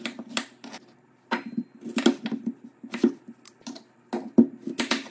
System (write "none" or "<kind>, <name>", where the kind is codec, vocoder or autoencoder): none